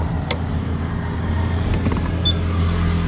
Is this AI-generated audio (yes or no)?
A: no